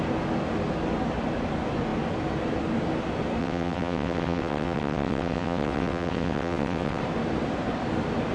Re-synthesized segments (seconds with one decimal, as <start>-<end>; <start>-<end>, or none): 3.4-7.0